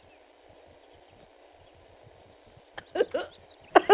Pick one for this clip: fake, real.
real